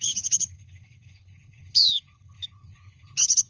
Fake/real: fake